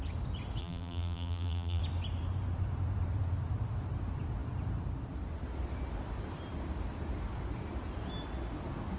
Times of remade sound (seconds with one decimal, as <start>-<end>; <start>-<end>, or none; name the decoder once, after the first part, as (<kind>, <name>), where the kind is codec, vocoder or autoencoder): 0.6-1.8 (vocoder, BigVGAN v2)